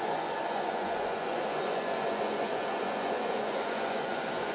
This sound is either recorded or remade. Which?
remade